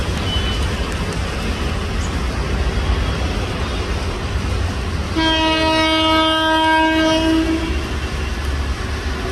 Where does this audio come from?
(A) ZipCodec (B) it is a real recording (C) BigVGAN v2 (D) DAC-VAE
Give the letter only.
B